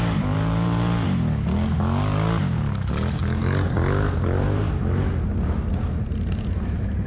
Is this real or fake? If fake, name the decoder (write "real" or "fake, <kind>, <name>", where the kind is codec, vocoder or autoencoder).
real